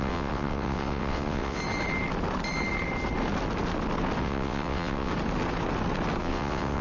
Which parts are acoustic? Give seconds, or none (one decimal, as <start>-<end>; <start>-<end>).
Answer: 1.6-4.2; 5.1-6.2